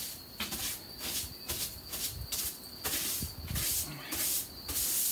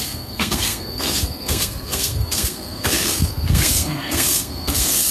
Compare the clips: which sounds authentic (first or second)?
first